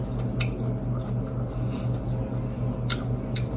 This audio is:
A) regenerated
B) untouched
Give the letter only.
B